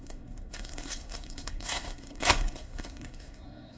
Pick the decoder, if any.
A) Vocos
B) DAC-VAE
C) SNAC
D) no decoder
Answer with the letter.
C